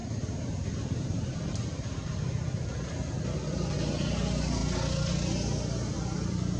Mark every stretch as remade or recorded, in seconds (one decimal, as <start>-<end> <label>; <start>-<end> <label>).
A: 0.0-2.9 remade; 2.9-6.6 recorded